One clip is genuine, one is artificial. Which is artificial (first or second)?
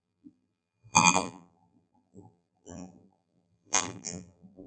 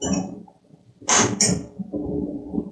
first